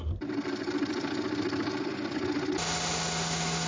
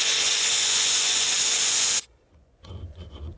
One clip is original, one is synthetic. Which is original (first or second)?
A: first